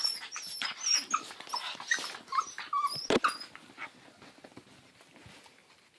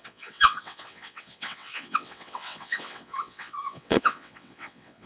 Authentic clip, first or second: first